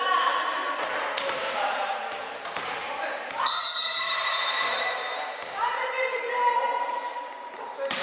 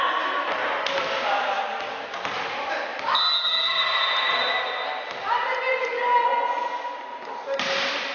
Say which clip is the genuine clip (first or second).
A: second